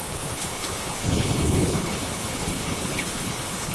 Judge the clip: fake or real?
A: fake